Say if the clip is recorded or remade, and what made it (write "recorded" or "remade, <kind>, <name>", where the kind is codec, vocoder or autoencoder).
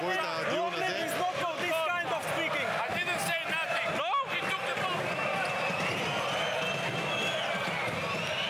recorded